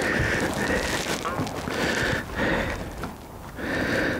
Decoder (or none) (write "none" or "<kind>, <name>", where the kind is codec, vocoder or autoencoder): none